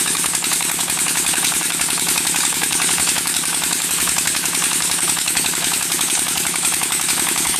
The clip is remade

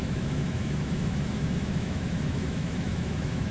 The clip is remade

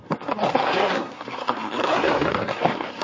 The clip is remade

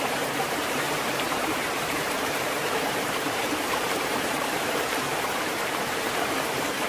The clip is remade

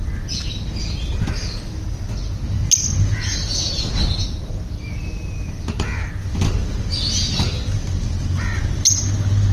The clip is recorded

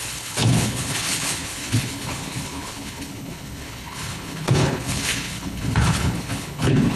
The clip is remade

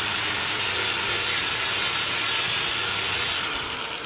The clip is recorded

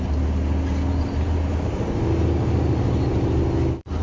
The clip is recorded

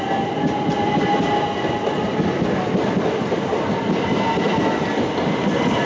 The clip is recorded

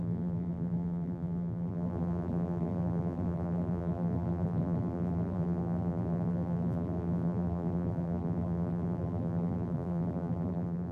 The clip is remade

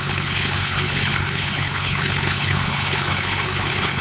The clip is remade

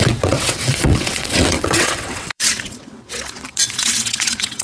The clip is remade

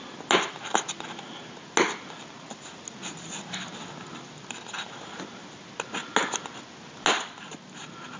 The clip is recorded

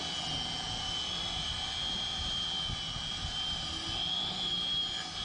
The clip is recorded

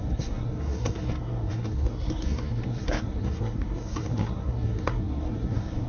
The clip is remade